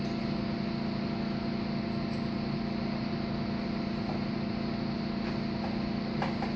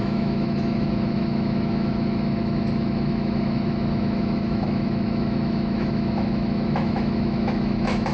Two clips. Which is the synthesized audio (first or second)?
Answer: second